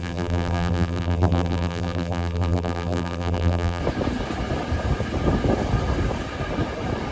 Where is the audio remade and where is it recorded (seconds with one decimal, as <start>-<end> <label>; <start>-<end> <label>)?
0.0-3.8 remade; 3.8-7.1 recorded